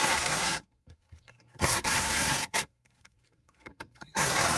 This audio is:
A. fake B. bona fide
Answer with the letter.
A